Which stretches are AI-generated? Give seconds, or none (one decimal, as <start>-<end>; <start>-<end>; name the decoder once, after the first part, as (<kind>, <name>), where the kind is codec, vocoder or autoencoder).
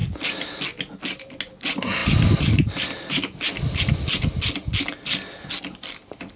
none